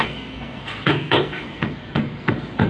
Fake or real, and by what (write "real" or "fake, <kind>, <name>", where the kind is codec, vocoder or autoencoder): fake, codec, SNAC